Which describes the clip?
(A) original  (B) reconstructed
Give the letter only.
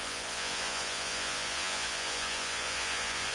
B